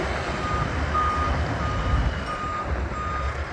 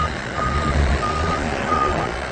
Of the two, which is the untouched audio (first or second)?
first